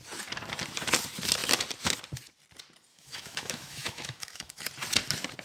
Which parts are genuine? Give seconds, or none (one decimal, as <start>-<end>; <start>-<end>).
0.0-2.9; 4.7-5.4